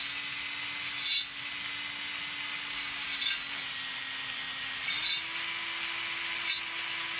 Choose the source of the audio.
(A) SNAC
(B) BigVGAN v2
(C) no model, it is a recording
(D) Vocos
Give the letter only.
C